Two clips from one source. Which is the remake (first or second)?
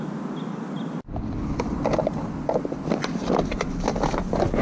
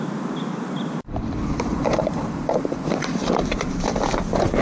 second